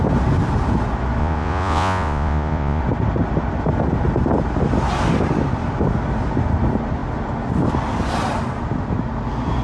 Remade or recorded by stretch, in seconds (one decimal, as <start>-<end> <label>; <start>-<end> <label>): 0.0-1.2 recorded; 1.2-2.8 remade; 2.8-9.6 recorded